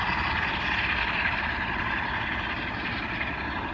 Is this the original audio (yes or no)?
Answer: yes